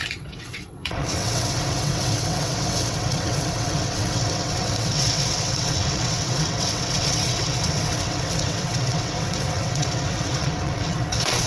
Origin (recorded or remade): remade